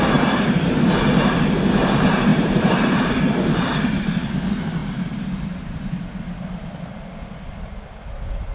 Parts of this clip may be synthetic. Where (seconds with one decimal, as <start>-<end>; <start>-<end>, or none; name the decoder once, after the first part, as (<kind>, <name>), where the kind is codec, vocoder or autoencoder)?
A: 2.3-3.1 (vocoder, BigVGAN v2); 4.8-6.0